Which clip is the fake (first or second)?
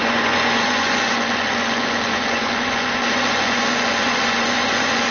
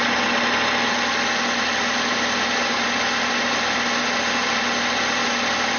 first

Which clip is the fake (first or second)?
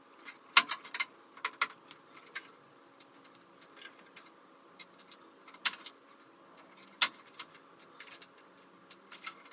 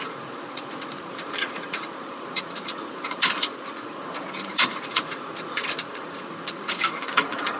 second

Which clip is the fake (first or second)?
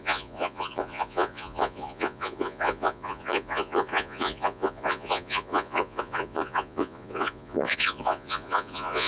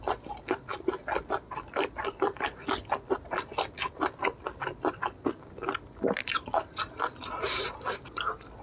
first